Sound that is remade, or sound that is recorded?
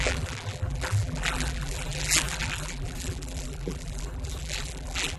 remade